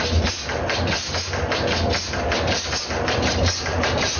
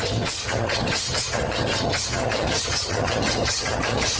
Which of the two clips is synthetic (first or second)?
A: second